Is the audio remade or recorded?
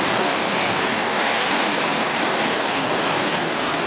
remade